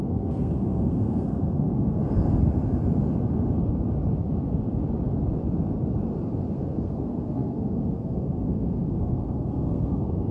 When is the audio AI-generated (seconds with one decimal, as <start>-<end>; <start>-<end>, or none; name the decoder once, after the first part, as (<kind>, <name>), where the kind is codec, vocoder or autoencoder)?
0.0-2.0 (codec, SNAC); 6.5-10.3